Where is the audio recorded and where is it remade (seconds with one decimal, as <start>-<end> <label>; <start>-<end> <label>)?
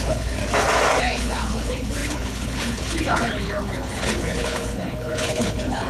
0.0-0.4 remade; 0.4-1.0 recorded; 1.0-5.9 remade